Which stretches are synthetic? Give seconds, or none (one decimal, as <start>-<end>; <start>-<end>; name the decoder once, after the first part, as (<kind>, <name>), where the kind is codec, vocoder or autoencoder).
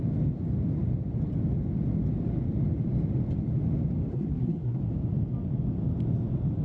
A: 4.1-4.8 (codec, SNAC)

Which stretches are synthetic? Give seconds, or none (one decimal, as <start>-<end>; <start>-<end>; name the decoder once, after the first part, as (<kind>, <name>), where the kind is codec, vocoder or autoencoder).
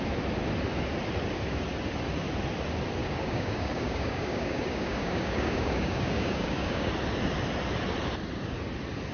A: 3.0-6.9 (codec, DAC)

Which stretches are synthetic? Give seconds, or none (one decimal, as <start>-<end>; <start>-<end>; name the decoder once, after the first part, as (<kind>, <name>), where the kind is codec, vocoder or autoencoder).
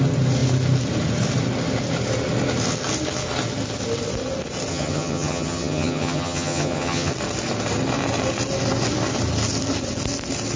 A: 4.7-7.1 (vocoder, HiFi-GAN)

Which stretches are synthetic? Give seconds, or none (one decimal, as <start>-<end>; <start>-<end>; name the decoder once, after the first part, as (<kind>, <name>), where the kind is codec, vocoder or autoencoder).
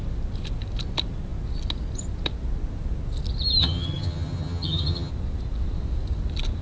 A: 3.6-5.1 (vocoder, HiFi-GAN)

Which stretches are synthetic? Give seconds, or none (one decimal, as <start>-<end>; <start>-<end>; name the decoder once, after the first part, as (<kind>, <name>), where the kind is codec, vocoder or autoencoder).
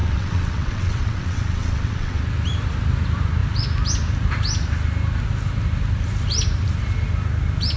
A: 0.0-2.2 (vocoder, WaveNeXt)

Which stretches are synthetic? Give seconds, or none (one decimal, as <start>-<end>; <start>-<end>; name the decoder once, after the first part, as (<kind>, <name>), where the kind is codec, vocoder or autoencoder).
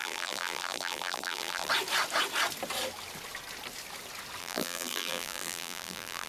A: 0.0-1.7 (vocoder, BigVGAN v2); 4.4-6.3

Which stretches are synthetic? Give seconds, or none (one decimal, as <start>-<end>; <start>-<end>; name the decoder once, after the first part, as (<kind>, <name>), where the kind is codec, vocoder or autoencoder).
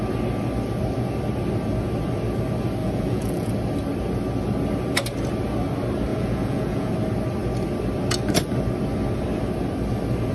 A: 2.8-3.5 (vocoder, Vocos); 6.1-6.9